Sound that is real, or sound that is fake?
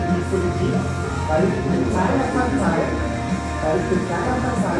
real